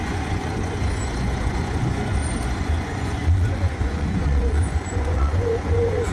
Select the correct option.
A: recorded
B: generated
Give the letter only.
B